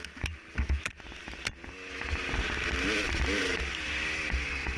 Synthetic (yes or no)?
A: no